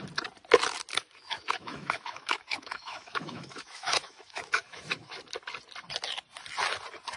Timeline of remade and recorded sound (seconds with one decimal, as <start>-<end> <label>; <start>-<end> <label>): 0.0-0.9 recorded; 0.9-5.2 remade; 5.2-7.2 recorded